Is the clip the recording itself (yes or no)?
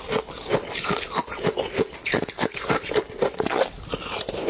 yes